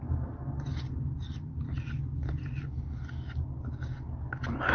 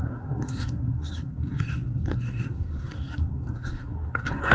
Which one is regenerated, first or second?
second